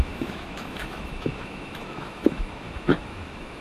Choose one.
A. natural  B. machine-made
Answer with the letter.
B